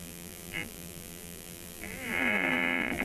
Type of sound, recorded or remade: remade